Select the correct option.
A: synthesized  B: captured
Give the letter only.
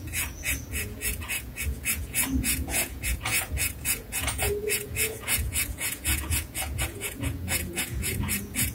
A